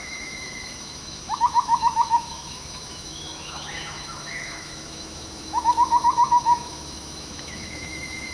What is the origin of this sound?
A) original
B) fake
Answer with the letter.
B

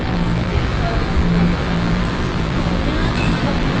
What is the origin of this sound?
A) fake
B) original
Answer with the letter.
A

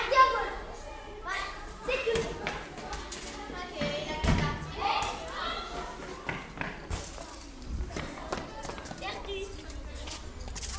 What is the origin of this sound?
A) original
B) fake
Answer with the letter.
A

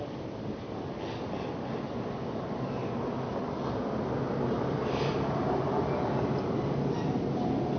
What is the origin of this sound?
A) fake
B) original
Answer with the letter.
B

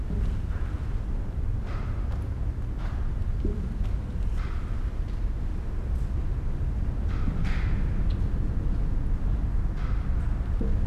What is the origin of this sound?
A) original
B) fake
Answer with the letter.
A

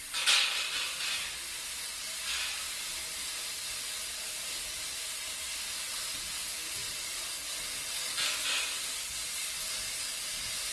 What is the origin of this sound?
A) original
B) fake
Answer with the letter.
A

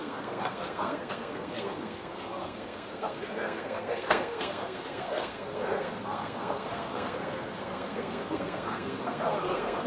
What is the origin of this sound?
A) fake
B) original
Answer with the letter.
A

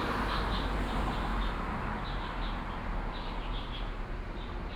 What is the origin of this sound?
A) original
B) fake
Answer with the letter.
A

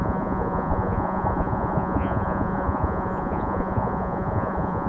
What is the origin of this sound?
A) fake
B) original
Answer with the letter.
A